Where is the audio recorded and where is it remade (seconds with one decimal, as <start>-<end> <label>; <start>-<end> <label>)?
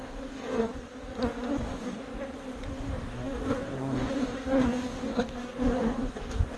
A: 0.0-0.7 remade; 0.7-1.6 recorded; 1.6-2.1 remade; 2.1-2.7 recorded; 2.7-6.6 remade